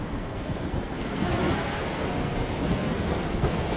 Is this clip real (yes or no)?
no